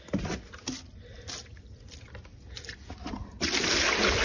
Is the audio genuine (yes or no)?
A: yes